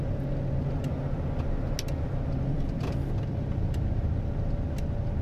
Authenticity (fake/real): real